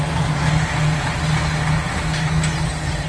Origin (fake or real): real